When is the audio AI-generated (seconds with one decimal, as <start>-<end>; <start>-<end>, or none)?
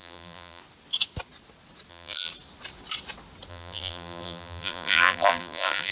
0.0-0.6; 1.9-2.3; 3.5-5.9